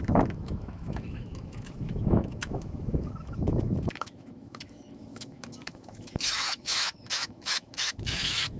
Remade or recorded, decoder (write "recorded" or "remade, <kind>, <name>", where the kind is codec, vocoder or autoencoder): remade, autoencoder, DAC-VAE